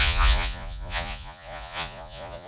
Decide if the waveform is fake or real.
fake